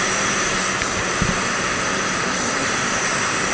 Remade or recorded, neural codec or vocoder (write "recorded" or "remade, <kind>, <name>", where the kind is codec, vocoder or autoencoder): remade, vocoder, BigVGAN v2